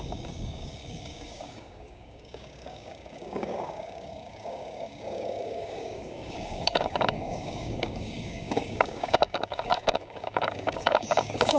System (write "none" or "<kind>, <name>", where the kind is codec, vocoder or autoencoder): codec, DAC